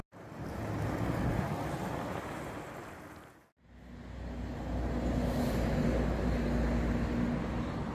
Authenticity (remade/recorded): recorded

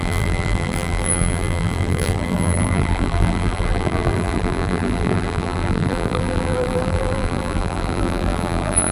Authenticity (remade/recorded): remade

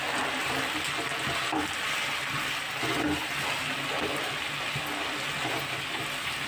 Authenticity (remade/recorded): recorded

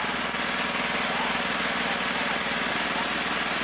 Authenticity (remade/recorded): recorded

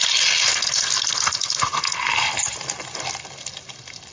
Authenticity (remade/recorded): recorded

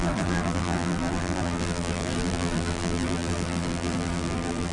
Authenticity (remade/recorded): remade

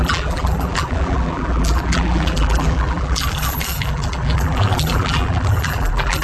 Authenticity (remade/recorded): remade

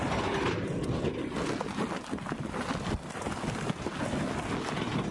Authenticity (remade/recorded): recorded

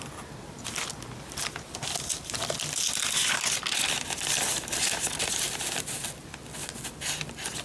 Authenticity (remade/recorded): recorded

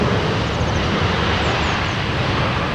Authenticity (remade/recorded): remade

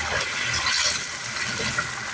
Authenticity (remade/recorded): recorded